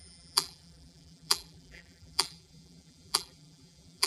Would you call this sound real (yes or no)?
no